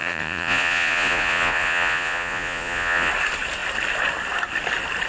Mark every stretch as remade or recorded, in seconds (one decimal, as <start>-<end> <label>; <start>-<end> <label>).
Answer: 0.0-3.1 remade; 3.1-5.1 recorded